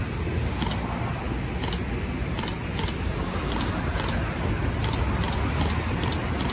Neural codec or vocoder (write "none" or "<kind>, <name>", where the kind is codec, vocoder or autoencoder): none